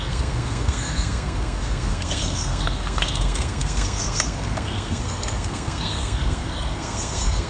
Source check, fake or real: fake